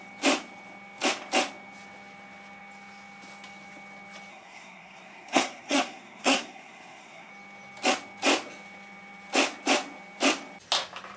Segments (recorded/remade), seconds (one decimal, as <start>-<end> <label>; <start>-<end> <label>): 0.0-4.3 recorded; 4.3-7.3 remade; 7.3-11.2 recorded